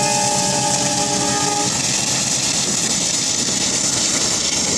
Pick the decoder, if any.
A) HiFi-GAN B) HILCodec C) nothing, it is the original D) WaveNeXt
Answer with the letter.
C